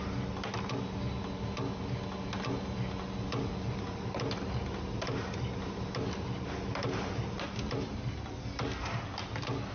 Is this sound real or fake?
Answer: real